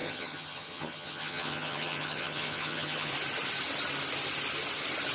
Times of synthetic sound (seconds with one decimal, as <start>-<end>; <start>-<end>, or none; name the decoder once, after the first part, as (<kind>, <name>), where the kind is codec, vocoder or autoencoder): 0.0-3.1 (vocoder, HiFi-GAN)